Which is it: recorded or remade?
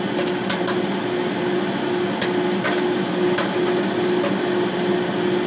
recorded